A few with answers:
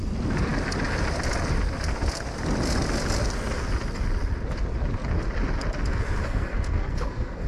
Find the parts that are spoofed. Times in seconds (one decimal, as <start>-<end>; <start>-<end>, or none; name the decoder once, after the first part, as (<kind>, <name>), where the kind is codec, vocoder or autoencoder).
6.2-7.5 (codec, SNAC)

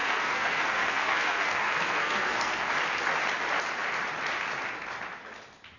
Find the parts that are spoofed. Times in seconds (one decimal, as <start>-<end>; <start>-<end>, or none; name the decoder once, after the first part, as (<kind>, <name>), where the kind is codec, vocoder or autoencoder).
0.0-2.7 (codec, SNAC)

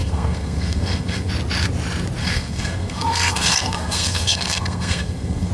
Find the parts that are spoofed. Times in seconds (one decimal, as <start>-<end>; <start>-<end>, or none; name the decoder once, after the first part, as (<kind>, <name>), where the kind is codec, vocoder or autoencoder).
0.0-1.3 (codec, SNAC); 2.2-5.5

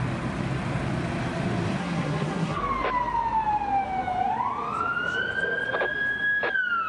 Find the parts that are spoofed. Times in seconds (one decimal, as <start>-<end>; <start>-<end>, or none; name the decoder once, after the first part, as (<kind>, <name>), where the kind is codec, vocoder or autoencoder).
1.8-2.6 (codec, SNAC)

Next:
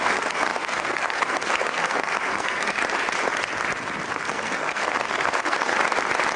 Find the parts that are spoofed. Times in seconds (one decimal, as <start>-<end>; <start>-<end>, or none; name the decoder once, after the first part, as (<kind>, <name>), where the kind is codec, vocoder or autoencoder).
0.0-2.8 (codec, SNAC); 4.1-5.7

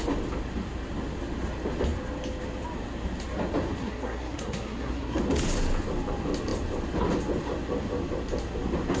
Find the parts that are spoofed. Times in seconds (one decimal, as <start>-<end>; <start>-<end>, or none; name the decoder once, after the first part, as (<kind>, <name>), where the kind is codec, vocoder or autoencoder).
3.8-5.2 (codec, SNAC)

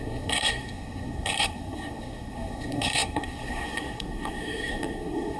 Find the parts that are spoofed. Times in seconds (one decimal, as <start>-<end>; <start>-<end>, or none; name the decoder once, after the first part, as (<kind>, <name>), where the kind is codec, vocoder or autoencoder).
0.0-5.4 (codec, SNAC)